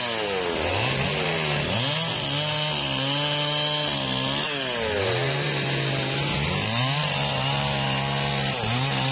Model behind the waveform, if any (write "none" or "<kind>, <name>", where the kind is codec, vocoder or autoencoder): none